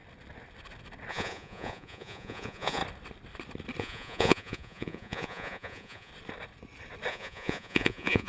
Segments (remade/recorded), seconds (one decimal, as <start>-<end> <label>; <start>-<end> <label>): 0.0-1.1 recorded; 1.1-2.8 remade; 2.8-3.8 recorded; 3.8-6.1 remade; 6.1-7.1 recorded; 7.1-8.3 remade